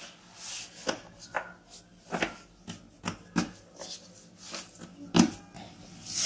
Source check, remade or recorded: recorded